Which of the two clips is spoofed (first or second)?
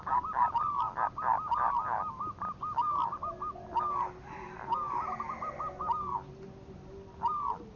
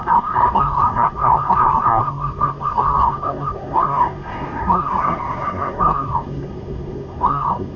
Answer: second